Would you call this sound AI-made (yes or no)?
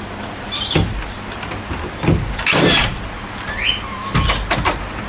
no